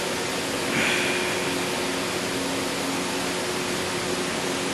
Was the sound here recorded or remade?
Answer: recorded